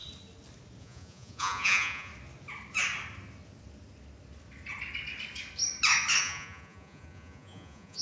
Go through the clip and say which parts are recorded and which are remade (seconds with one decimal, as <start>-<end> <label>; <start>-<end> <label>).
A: 0.0-0.8 recorded; 0.8-2.1 remade; 2.1-6.2 recorded; 6.2-8.0 remade